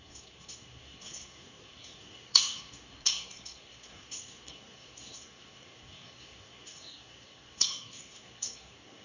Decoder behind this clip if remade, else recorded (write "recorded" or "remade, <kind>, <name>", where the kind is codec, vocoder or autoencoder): remade, codec, SNAC